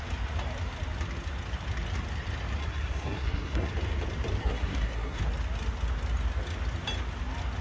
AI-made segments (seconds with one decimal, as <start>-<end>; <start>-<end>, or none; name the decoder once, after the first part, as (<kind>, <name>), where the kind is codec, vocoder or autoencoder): 2.6-3.7 (codec, SNAC); 4.4-5.2